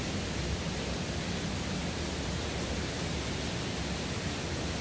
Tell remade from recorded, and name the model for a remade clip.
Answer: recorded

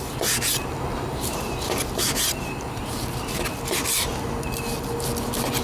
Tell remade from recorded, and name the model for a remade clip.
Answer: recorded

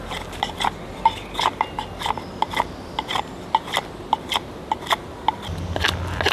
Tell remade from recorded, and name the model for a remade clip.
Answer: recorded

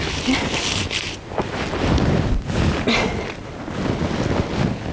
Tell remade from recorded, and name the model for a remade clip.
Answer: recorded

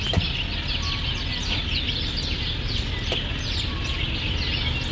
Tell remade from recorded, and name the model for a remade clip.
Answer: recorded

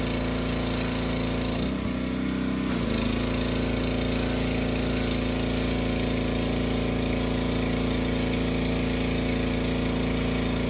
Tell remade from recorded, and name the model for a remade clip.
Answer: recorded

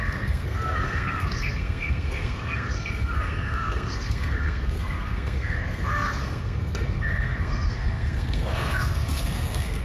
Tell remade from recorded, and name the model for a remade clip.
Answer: remade, codec, SNAC